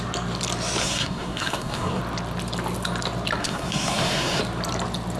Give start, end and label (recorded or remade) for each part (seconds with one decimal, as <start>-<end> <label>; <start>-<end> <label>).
0.0-0.8 recorded; 0.8-2.0 remade; 2.0-3.4 recorded; 3.4-4.4 remade; 4.4-5.2 recorded